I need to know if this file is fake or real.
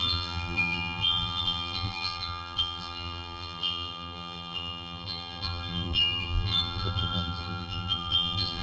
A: fake